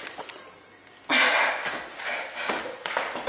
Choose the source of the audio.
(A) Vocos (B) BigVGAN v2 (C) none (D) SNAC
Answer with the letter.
C